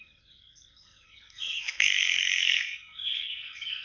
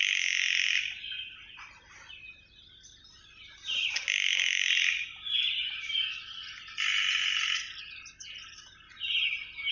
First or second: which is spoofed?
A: first